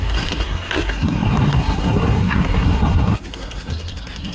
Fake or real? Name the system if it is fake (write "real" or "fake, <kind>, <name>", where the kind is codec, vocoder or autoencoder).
fake, codec, SNAC